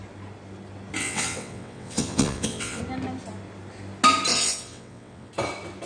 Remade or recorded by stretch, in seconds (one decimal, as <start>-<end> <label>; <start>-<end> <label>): 0.0-1.0 recorded; 1.0-2.8 remade; 2.8-4.3 recorded; 4.3-5.3 remade; 5.3-5.9 recorded